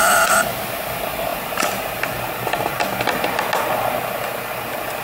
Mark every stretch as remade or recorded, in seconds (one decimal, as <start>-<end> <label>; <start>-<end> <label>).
0.0-5.0 recorded